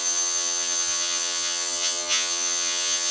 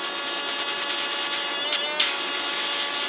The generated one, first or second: first